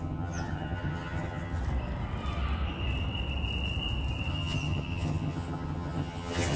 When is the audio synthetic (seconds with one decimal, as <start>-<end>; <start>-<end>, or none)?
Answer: 0.0-1.6; 4.3-6.6